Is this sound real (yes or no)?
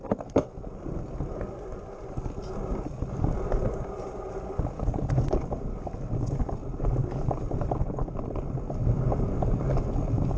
yes